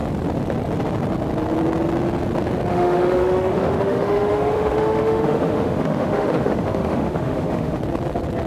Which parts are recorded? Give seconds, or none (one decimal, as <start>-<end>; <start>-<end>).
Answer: 0.0-2.7; 7.8-8.5